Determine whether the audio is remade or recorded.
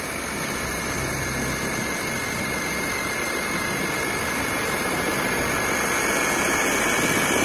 recorded